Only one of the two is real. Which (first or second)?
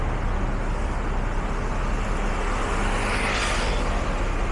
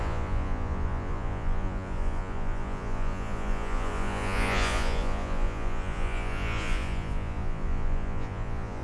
first